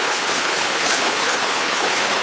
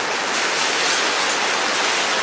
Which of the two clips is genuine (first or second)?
second